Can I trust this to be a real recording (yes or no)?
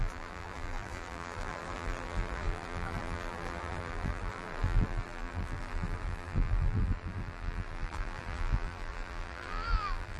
no